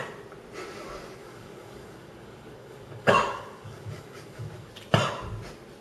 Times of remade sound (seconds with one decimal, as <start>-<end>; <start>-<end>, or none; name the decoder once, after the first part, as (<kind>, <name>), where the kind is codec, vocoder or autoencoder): 1.2-4.7 (codec, DAC)

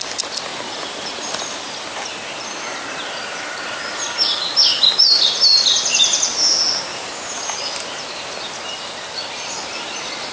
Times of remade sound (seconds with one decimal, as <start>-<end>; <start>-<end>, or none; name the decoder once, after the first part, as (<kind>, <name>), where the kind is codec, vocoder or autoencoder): none

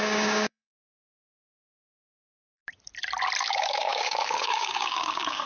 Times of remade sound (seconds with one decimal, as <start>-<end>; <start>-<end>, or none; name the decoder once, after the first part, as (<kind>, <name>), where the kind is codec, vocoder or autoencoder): 0.0-2.6 (codec, DAC); 3.4-5.5

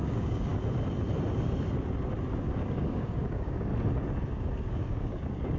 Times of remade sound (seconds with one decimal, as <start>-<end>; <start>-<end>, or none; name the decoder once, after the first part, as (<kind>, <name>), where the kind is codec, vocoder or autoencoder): 0.0-0.5 (codec, DAC); 2.4-3.7; 4.3-5.6

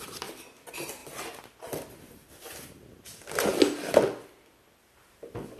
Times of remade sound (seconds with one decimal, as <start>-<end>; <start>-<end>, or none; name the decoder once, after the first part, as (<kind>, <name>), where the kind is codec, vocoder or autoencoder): none

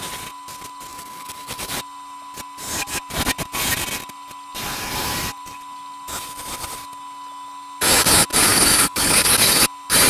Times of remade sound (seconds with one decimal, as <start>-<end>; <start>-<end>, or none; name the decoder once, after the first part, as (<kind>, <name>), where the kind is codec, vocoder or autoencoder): 0.9-1.8 (codec, DAC); 8.5-9.6

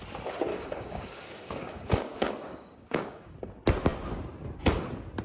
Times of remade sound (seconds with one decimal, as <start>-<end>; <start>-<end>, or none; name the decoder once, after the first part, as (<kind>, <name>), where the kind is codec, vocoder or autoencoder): 0.5-3.3 (codec, DAC)